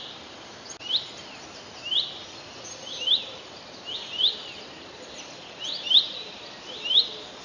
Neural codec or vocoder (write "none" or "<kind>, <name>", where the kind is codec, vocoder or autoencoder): none